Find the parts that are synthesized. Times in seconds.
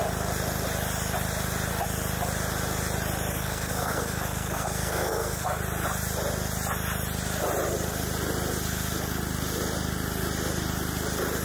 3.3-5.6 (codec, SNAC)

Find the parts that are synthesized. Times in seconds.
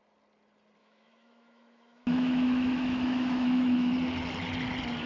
0.8-3.9 (autoencoder, DAC-VAE)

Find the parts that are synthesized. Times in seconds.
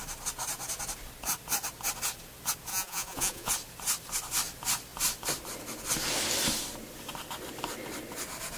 2.7-3.5 (vocoder, Vocos)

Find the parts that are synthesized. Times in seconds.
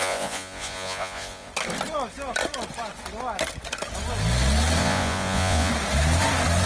0.0-1.5 (vocoder, Vocos); 4.8-5.7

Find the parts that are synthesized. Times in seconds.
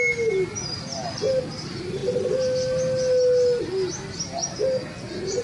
none